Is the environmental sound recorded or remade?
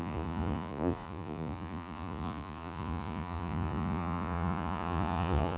remade